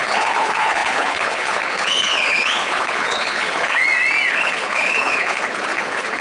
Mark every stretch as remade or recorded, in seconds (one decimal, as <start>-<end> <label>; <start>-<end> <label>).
0.0-3.8 remade; 3.8-4.3 recorded; 4.3-6.2 remade